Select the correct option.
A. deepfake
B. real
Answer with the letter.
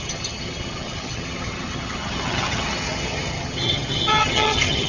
A